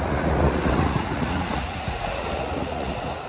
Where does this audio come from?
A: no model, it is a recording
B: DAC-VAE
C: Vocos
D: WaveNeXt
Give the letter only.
C